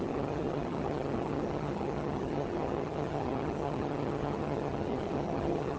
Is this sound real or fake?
fake